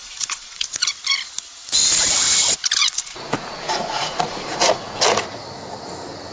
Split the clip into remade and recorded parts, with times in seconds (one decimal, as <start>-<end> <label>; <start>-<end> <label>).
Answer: 0.0-0.9 remade; 0.9-2.8 recorded; 2.8-5.0 remade; 5.0-6.3 recorded